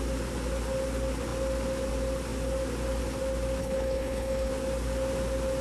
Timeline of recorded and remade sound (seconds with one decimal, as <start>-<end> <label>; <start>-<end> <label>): 0.0-3.6 recorded; 3.6-4.5 remade; 4.5-5.6 recorded